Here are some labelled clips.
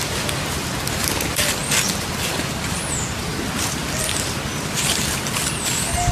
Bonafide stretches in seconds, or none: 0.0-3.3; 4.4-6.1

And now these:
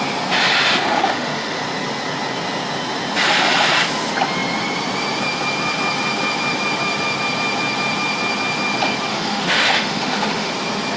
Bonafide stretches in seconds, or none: 0.0-0.8; 1.6-9.1; 10.5-11.0